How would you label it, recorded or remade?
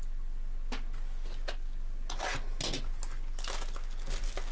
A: recorded